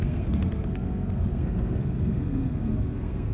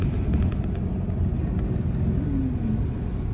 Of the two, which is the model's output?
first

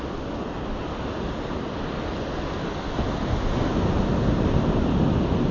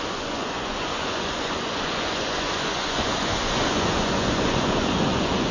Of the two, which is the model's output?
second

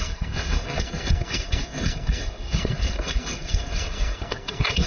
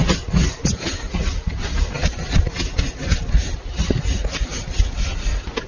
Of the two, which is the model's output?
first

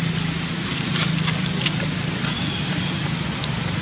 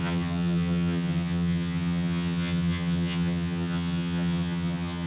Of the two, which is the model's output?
second